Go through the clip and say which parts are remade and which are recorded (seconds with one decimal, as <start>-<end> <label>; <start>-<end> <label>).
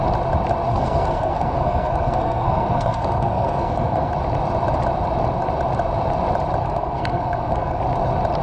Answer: 0.0-0.7 recorded; 0.7-4.1 remade; 4.1-6.6 recorded; 6.6-7.8 remade; 7.8-8.4 recorded